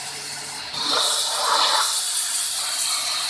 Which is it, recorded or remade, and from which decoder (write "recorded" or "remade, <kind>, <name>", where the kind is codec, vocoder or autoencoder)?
remade, vocoder, BigVGAN v2